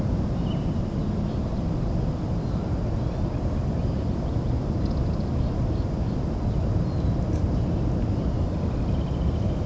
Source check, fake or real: real